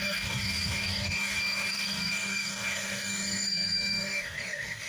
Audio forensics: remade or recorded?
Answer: remade